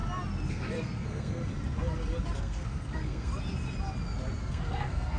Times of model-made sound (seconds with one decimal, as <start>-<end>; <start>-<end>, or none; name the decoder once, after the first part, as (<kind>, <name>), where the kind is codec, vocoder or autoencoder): 0.5-1.4 (codec, SNAC); 2.4-3.3; 4.4-5.2